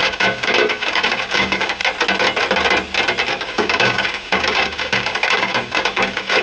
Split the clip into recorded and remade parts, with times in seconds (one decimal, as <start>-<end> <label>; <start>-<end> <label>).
0.0-1.8 remade; 1.8-3.3 recorded; 3.3-6.4 remade